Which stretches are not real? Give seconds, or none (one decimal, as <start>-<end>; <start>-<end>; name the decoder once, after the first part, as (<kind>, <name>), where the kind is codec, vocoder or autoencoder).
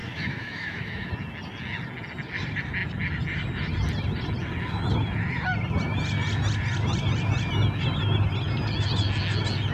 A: 0.0-1.1 (autoencoder, DAC-VAE)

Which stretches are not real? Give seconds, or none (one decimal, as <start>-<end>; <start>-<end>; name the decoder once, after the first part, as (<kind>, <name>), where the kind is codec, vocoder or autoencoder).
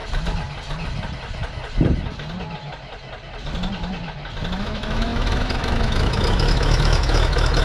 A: 4.6-7.6 (autoencoder, DAC-VAE)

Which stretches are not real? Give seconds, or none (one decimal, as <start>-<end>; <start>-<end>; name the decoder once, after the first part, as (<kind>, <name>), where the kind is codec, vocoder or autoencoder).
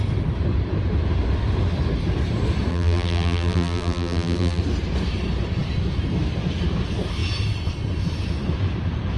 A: 2.7-4.6 (vocoder, BigVGAN v2)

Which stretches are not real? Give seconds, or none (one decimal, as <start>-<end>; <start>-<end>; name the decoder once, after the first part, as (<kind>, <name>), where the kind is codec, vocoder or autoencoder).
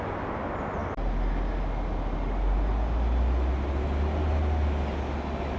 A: none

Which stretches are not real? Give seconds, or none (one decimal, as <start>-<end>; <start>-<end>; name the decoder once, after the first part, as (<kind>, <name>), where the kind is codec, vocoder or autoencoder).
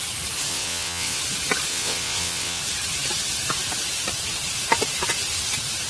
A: 0.5-1.2 (vocoder, WaveNeXt); 1.7-2.6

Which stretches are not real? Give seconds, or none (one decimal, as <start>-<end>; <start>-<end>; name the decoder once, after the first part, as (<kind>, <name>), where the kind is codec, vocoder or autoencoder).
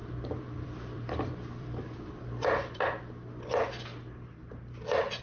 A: 0.0-2.8 (vocoder, BigVGAN v2)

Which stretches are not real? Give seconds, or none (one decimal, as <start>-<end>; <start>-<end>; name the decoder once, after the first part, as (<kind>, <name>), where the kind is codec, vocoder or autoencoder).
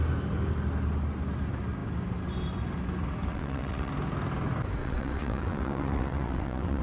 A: 3.3-3.9 (vocoder, WaveNeXt); 4.8-6.8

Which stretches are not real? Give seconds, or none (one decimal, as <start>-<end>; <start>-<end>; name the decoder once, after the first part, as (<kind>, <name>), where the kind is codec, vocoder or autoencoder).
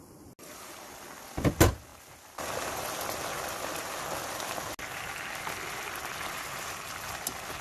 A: none